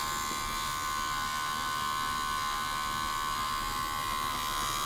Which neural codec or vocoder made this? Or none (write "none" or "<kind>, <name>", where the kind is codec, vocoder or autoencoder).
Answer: none